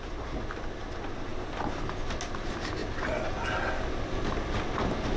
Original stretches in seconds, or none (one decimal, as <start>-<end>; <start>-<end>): 0.0-5.2